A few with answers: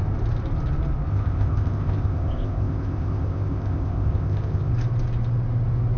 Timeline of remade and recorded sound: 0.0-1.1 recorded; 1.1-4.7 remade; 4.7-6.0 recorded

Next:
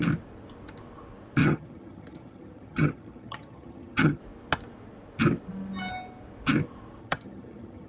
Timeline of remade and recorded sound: 0.0-1.4 recorded; 1.4-4.2 remade; 4.2-7.0 recorded; 7.0-7.9 remade

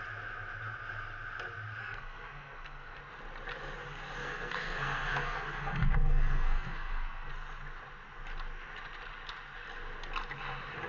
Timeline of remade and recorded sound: 0.0-1.8 recorded; 1.8-3.0 remade; 3.0-4.2 recorded; 4.2-7.3 remade; 7.3-10.9 recorded

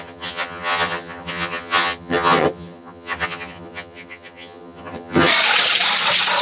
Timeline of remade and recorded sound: 0.0-5.3 remade; 5.3-6.4 recorded

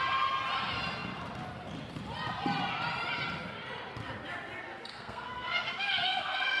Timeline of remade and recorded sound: 0.0-4.9 recorded; 4.9-6.6 remade